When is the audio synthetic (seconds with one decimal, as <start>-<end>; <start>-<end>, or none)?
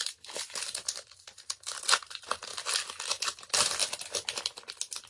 0.0-2.5; 3.1-3.8